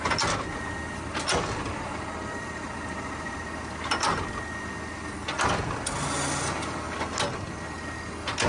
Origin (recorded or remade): recorded